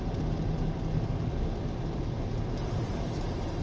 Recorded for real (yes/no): yes